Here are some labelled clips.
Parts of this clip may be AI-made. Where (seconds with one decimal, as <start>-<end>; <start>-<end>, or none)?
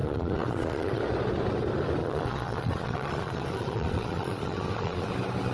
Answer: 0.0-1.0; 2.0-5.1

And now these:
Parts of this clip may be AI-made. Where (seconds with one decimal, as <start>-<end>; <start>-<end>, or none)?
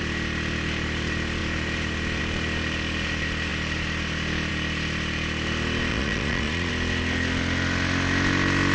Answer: 5.9-6.7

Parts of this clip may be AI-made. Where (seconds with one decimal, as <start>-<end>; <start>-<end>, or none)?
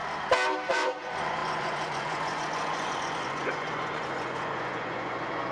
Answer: 0.7-5.5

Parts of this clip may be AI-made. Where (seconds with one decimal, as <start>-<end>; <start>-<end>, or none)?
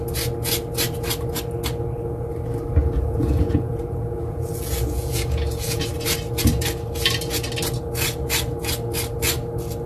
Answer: 2.8-5.9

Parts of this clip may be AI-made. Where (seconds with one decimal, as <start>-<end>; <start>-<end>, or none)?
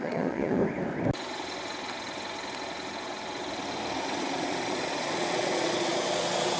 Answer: 0.0-0.6; 4.2-6.6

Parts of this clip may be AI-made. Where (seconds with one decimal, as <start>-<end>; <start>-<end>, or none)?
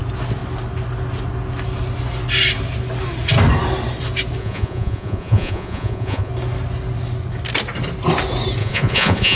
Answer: 4.4-6.3; 8.6-9.4